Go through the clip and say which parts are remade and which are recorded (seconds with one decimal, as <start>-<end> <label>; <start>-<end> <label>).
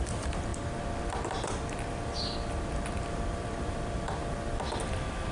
0.0-4.2 remade; 4.2-5.3 recorded